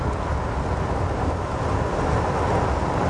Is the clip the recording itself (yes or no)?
yes